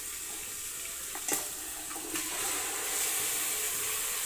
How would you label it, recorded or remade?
recorded